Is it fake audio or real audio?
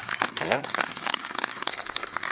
fake